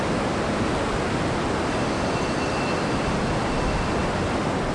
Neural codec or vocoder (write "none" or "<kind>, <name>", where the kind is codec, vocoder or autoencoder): none